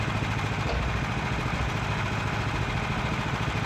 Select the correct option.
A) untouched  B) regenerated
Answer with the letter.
A